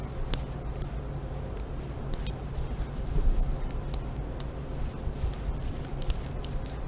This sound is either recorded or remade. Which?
recorded